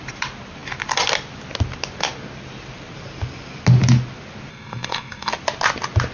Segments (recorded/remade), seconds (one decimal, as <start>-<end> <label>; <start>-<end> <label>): 0.0-4.5 recorded; 4.5-5.3 remade; 5.3-6.1 recorded